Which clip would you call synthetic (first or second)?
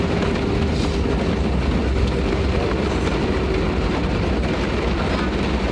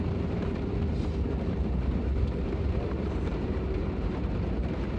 second